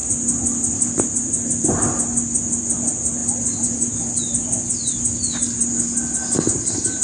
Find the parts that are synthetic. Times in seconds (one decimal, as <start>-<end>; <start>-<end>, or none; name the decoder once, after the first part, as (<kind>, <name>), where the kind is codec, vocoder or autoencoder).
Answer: none